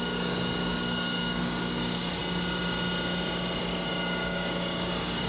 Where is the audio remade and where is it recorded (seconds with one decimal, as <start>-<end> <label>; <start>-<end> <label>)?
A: 0.0-2.2 remade; 2.2-3.6 recorded; 3.6-5.3 remade